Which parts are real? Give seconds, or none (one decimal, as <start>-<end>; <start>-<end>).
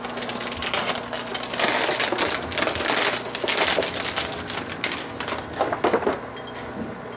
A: 0.0-7.2